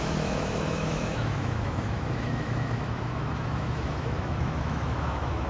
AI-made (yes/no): yes